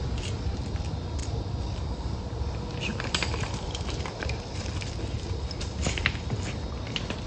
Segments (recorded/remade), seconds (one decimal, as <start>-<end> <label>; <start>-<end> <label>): 0.0-1.2 recorded; 1.2-2.4 remade; 2.4-2.9 recorded; 2.9-3.7 remade; 3.7-7.3 recorded